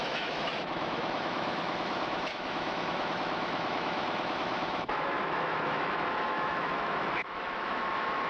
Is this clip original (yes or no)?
no